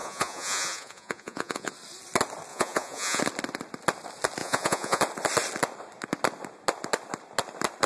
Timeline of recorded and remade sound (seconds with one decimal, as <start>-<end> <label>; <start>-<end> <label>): 0.0-1.7 remade; 1.7-2.5 recorded; 2.5-3.2 remade; 3.2-4.4 recorded; 4.4-5.0 remade; 5.0-7.9 recorded